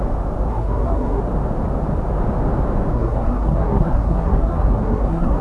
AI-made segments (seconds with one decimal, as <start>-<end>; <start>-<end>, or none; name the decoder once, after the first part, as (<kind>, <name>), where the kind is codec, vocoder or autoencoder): 0.5-1.2 (codec, SNAC); 2.9-5.4